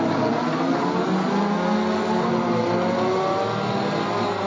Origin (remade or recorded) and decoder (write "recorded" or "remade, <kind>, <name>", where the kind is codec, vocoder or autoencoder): recorded